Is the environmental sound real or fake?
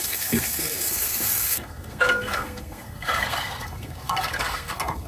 fake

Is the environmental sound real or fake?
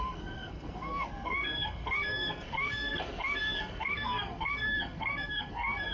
fake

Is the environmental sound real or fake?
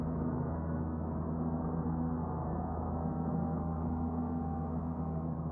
fake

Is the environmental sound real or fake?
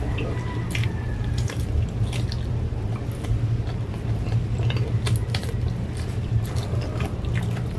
real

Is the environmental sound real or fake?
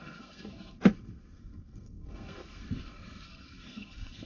fake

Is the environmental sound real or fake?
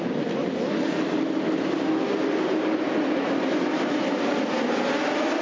real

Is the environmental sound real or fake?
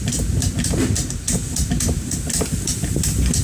real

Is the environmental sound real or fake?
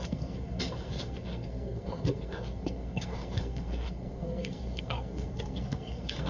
fake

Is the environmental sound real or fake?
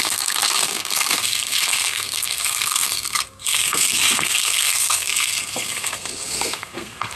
fake